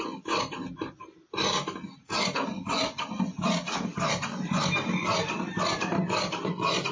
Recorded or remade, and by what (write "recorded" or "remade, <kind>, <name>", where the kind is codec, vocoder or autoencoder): recorded